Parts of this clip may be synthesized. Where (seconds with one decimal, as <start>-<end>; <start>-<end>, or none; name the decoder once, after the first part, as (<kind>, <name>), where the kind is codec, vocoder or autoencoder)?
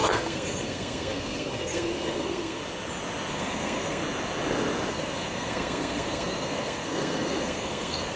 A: 0.0-2.6 (codec, SNAC); 3.3-4.0; 4.9-8.2